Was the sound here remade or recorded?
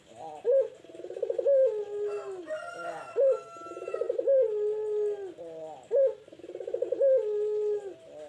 recorded